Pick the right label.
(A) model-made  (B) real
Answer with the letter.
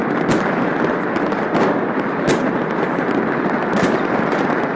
B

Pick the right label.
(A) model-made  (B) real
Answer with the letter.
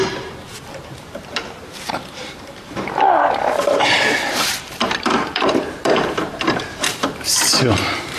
A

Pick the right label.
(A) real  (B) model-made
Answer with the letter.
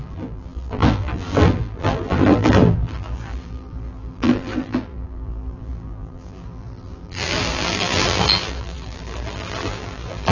B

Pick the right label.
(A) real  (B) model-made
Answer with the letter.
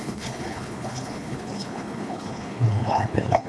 B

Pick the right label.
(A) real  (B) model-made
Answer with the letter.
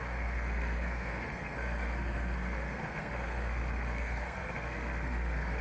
B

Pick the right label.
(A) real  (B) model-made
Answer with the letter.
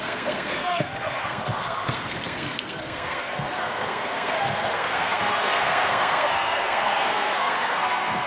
B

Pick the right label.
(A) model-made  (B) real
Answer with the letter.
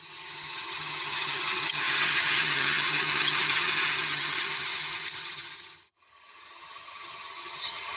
A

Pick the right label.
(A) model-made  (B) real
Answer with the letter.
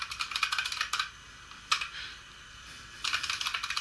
B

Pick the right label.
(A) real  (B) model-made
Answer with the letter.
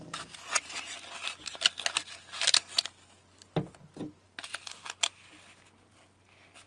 A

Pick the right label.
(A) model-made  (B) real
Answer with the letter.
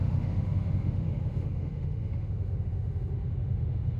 A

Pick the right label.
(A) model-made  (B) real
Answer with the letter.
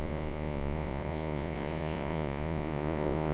A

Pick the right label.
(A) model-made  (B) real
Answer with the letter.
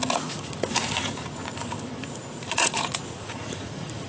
A